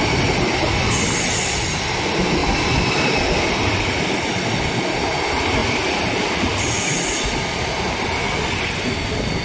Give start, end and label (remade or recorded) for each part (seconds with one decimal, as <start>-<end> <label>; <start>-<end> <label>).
0.0-2.4 recorded; 2.4-4.2 remade; 4.2-5.6 recorded; 5.6-9.4 remade